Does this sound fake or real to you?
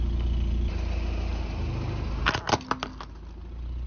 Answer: real